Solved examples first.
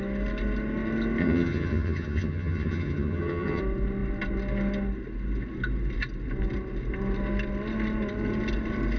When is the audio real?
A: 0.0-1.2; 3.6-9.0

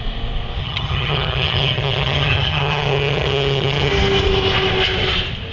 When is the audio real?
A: 0.0-0.6; 3.9-5.5

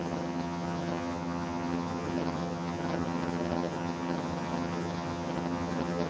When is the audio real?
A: none

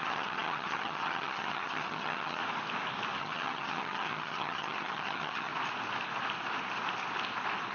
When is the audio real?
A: 2.4-3.2; 5.5-7.7

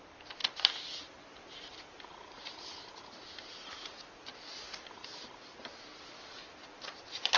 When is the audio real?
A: 0.0-7.4

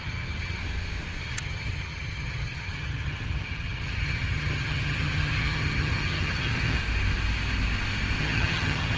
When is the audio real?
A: 0.6-1.2; 6.8-8.2

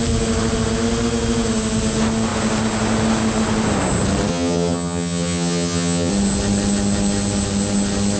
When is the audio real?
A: 0.0-4.3; 6.1-8.2